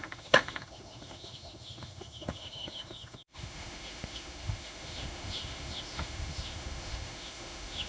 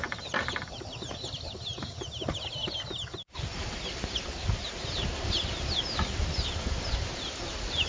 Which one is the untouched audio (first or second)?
second